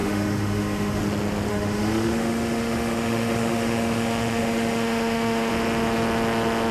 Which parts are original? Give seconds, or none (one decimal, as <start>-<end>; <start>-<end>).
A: 1.0-1.5; 5.5-6.7